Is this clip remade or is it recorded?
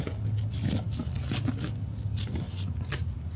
recorded